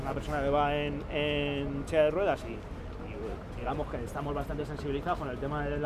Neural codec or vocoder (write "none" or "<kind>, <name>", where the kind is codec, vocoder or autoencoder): none